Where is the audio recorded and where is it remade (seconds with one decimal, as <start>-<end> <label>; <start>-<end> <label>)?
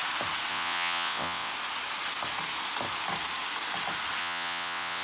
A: 0.0-0.5 recorded; 0.5-1.5 remade; 1.5-4.2 recorded; 4.2-5.0 remade